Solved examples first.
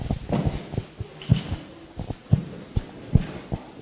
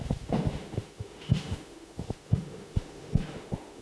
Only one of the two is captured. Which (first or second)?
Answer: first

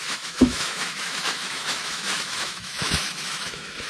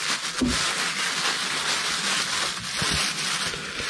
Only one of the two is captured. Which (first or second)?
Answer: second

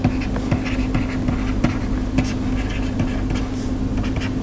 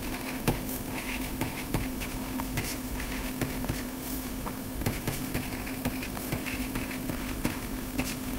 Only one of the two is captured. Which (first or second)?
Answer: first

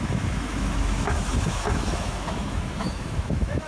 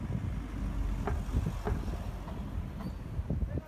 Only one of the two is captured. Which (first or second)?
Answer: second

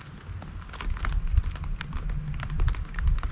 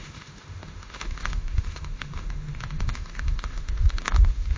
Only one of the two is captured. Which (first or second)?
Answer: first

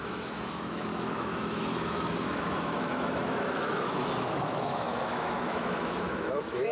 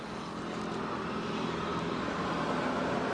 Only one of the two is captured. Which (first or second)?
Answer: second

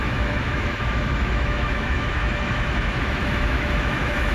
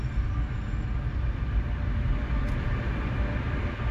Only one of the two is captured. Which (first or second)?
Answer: second